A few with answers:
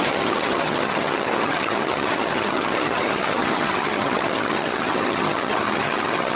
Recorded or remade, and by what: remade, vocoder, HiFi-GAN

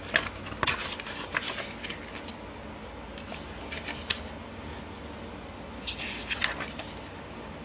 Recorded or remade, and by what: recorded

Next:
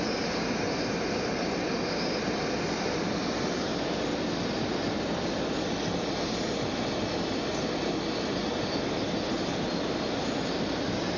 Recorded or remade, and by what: recorded